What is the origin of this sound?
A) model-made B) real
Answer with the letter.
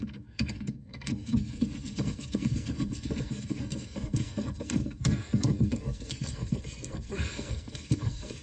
A